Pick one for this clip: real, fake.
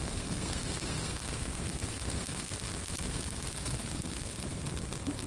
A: fake